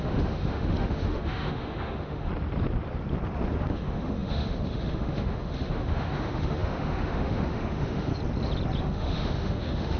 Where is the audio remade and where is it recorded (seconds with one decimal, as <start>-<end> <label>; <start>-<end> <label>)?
0.0-2.3 remade; 2.3-3.7 recorded; 3.7-8.1 remade; 8.1-8.8 recorded; 8.8-10.0 remade